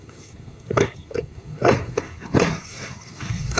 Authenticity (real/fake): fake